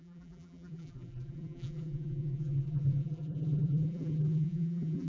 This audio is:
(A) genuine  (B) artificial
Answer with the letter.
B